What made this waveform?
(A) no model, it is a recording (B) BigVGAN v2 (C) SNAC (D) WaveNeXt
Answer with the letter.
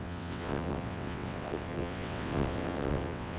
D